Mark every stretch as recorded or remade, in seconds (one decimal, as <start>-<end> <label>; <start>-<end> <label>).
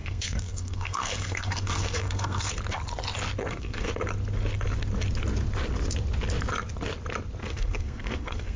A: 0.0-2.5 remade; 2.5-3.4 recorded; 3.4-3.9 remade; 3.9-7.4 recorded; 7.4-8.6 remade